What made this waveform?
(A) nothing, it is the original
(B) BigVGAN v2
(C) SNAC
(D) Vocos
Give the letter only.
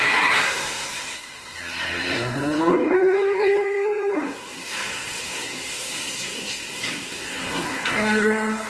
C